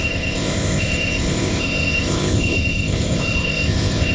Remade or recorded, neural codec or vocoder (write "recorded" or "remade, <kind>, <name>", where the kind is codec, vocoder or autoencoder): remade, codec, ZipCodec